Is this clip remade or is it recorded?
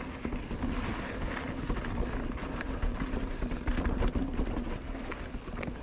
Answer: recorded